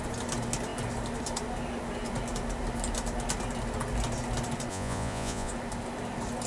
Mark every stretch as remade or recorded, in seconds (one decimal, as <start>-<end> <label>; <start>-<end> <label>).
0.0-4.7 recorded; 4.7-5.5 remade; 5.5-6.5 recorded